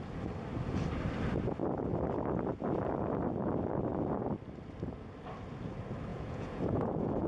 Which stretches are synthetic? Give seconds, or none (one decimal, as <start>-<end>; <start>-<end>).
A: 6.1-7.3